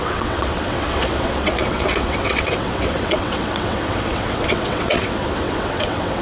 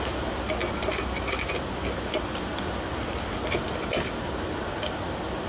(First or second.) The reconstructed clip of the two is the first